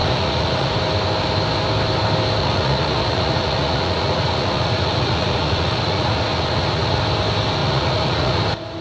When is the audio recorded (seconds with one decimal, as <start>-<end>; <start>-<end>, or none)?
0.7-2.4; 7.0-7.6; 8.4-8.8

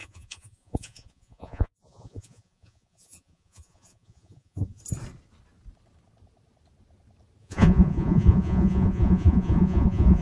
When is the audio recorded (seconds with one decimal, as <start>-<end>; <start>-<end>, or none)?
4.8-7.4

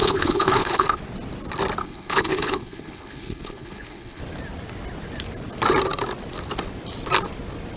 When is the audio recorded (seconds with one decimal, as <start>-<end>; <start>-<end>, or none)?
1.0-1.8; 4.2-7.8

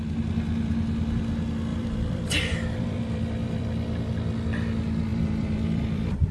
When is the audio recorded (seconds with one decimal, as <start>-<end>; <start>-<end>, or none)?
0.0-1.7; 3.6-5.1

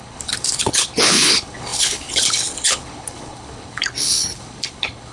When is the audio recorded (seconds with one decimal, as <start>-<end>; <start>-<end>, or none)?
none